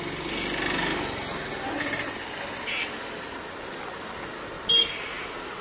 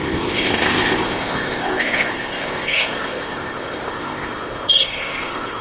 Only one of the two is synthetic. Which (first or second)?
second